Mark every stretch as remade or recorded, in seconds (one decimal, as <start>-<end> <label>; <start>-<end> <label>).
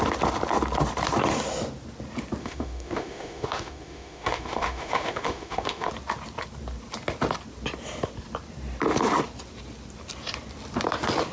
0.0-2.4 recorded; 2.4-5.9 remade; 5.9-11.3 recorded